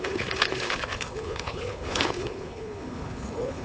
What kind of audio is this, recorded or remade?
remade